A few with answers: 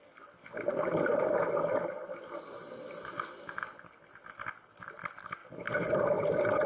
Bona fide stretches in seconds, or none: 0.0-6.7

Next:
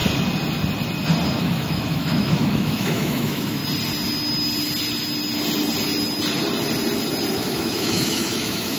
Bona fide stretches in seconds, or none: 0.0-1.4; 3.6-7.3